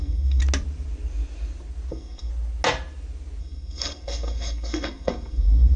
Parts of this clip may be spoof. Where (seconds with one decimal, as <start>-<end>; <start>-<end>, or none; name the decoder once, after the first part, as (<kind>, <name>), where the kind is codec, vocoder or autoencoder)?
0.0-0.4 (codec, SNAC); 1.9-2.3; 3.4-5.8